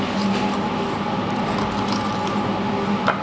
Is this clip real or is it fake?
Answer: real